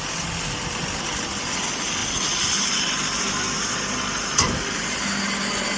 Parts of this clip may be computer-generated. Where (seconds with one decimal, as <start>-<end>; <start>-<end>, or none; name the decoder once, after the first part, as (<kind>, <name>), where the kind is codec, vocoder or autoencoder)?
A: none